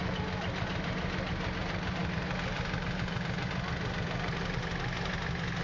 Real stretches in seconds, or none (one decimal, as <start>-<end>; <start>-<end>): 0.0-5.6